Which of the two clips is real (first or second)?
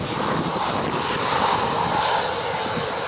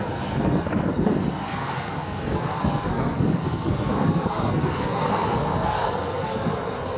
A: first